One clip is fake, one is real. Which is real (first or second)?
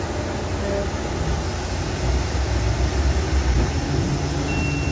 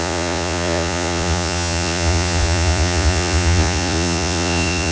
first